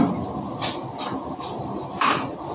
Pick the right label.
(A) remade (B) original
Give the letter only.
B